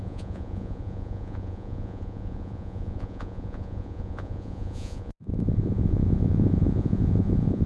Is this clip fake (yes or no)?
yes